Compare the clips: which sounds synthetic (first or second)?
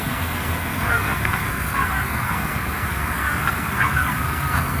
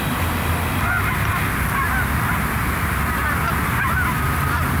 first